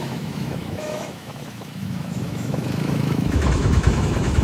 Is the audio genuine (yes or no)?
no